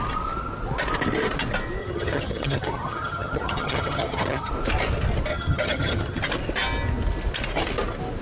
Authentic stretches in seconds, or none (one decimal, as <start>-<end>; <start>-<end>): 0.0-1.8; 4.5-5.3; 6.2-8.2